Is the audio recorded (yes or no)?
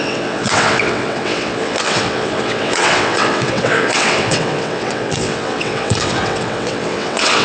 no